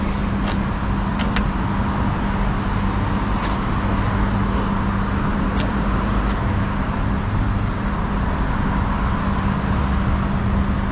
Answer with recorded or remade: recorded